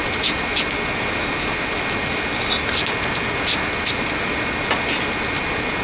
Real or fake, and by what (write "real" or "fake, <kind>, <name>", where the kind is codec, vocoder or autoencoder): real